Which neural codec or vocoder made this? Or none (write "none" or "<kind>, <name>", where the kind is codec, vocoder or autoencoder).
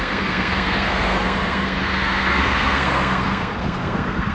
codec, SNAC